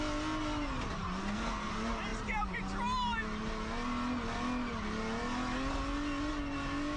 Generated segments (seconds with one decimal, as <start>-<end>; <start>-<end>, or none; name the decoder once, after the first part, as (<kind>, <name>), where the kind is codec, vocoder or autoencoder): 1.2-1.7 (codec, SNAC)